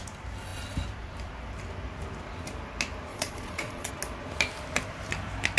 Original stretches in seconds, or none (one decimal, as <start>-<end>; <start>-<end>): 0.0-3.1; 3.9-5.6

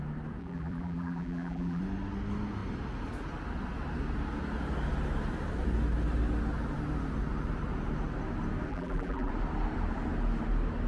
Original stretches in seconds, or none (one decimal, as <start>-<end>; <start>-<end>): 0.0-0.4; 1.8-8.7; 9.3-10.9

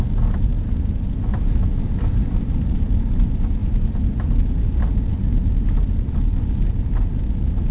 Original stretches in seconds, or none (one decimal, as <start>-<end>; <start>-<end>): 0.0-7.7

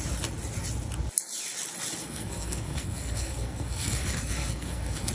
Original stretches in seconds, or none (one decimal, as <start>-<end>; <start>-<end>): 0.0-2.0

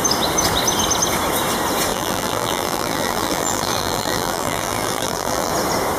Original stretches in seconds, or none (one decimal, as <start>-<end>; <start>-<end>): 0.0-1.9; 5.5-6.0

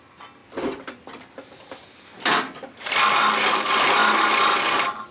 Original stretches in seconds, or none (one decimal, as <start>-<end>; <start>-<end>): 0.0-5.1